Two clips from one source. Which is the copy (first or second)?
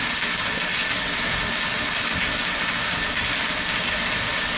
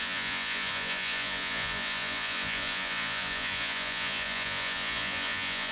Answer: second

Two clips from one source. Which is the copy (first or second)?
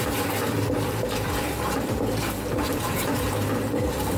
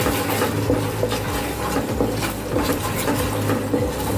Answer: first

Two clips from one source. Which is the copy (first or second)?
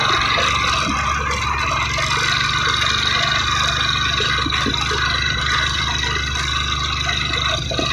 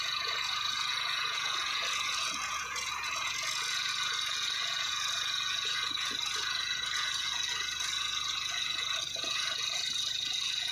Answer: second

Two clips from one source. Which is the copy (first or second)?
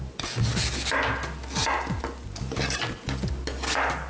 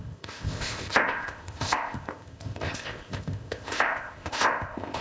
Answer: second